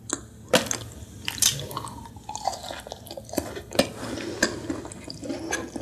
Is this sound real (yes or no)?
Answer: yes